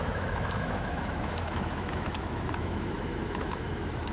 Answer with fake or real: fake